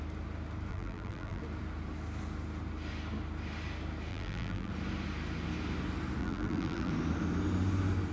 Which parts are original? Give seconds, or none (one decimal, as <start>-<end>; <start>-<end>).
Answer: 0.0-0.7; 1.4-4.1; 4.7-6.2; 6.9-8.1